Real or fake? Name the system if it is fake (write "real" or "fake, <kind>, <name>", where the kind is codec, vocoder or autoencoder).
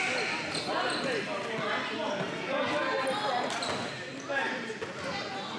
real